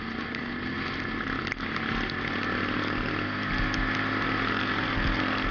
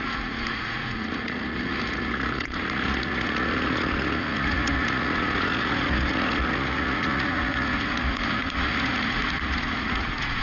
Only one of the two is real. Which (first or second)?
first